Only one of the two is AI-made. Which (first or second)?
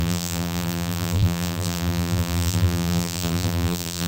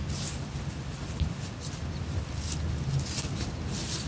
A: first